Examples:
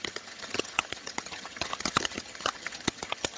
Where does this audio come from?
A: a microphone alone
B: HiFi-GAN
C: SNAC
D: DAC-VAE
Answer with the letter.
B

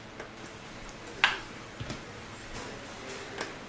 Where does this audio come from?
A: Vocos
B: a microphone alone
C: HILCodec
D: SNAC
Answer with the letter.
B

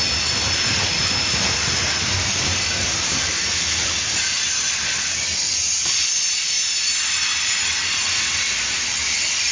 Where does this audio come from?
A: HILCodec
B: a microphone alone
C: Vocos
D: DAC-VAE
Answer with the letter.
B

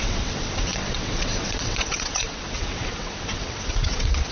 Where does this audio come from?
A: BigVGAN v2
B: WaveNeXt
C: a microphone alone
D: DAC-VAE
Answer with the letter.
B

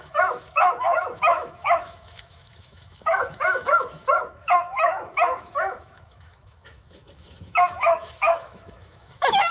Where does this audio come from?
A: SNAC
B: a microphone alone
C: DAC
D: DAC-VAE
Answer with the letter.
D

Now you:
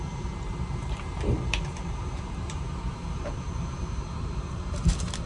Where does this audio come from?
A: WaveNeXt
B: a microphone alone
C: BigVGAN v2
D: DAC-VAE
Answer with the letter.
C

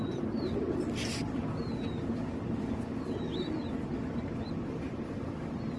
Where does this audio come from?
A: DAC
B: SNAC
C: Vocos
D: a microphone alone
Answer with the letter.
D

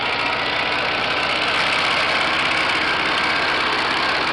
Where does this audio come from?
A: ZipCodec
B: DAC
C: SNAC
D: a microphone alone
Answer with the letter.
D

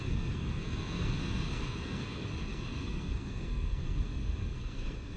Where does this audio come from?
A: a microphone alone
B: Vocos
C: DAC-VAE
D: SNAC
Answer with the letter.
D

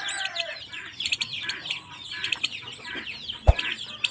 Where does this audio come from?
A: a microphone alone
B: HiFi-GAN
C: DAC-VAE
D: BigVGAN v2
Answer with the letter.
D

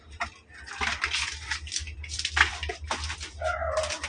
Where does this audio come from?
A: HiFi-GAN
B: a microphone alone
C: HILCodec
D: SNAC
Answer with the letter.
B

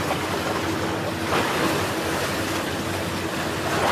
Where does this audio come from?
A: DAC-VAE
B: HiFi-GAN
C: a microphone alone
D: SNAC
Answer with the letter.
C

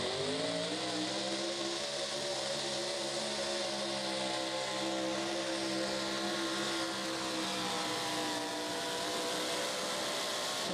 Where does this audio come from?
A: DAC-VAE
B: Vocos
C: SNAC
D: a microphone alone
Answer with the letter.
D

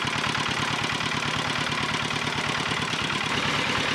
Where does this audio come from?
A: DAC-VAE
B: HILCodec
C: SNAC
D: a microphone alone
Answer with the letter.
D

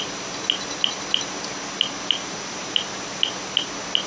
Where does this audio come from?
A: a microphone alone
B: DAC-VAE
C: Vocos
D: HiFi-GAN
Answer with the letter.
A